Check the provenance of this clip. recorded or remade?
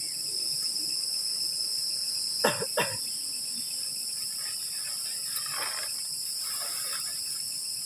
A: recorded